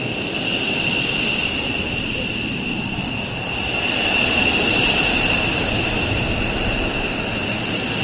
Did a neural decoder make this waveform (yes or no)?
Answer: no